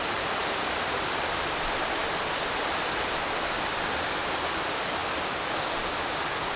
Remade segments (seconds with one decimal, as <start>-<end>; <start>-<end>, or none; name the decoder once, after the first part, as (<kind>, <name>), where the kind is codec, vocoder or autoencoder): 0.0-5.0 (vocoder, BigVGAN v2); 5.6-6.6